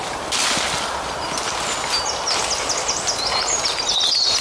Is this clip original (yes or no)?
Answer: yes